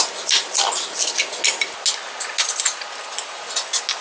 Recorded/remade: recorded